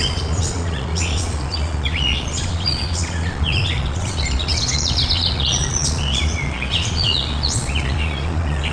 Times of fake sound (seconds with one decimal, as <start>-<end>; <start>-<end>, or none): 0.0-8.7